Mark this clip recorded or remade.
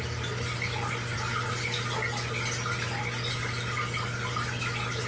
recorded